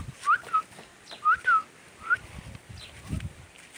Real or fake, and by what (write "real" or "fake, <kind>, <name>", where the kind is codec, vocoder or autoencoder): real